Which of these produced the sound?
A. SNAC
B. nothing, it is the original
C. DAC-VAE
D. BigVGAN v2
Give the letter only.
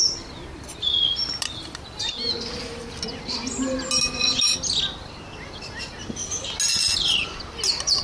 B